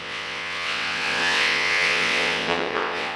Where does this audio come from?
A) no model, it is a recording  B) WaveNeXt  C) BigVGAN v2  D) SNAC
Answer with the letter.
B